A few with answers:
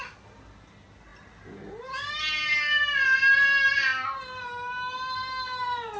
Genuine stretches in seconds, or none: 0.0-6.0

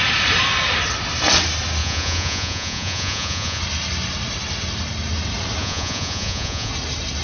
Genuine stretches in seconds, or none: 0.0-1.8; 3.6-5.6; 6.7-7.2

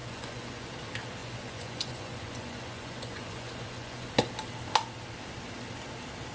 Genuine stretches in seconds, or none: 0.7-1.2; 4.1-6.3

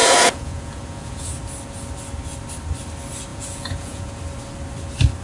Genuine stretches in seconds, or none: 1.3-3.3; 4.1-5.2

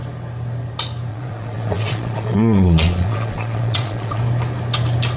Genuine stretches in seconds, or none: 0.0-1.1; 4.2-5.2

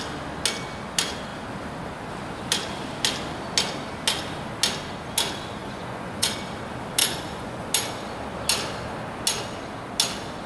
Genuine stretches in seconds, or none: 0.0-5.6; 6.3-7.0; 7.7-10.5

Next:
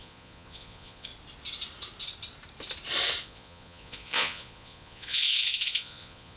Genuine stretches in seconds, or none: 1.1-3.2